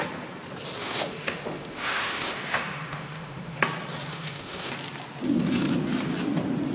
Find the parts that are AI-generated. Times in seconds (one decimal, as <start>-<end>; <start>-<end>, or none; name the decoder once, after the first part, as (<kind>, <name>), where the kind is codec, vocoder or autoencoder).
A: 0.8-3.6 (autoencoder, DAC-VAE); 4.1-4.7